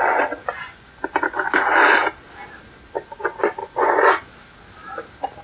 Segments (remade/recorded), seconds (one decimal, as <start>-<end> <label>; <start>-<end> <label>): 0.0-0.4 recorded; 0.4-1.0 remade; 1.0-3.6 recorded; 3.6-4.3 remade; 4.3-5.4 recorded